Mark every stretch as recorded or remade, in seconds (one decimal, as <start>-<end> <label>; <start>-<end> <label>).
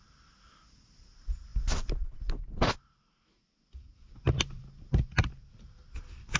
0.0-6.4 recorded